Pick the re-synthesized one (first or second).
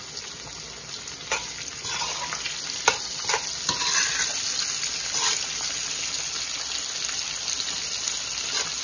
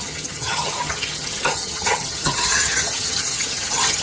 second